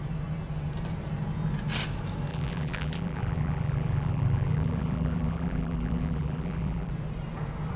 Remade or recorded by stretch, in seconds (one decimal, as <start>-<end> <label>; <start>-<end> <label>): 0.0-2.3 recorded; 2.3-6.9 remade; 6.9-7.8 recorded